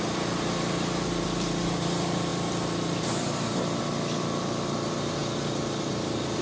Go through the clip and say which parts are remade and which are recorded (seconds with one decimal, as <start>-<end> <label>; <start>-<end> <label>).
0.0-6.4 remade